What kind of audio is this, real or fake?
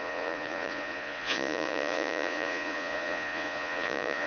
fake